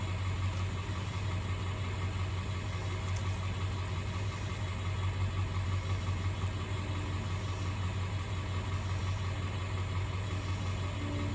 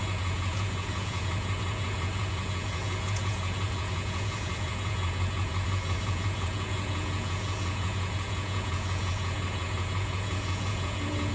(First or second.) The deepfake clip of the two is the second